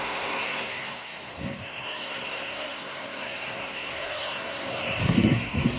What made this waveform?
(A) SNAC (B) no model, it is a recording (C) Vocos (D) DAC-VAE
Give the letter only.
A